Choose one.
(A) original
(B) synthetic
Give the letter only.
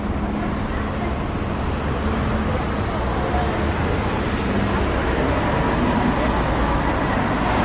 A